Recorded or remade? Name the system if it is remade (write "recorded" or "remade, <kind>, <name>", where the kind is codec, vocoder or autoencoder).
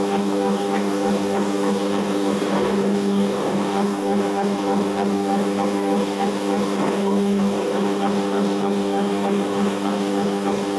remade, codec, DAC